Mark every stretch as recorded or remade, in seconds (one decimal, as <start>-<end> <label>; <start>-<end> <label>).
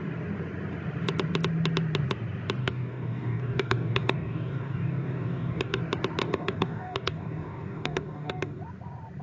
0.0-2.6 recorded; 2.6-5.8 remade; 5.8-6.2 recorded; 6.2-8.6 remade; 8.6-9.2 recorded